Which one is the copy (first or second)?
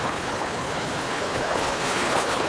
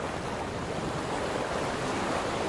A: first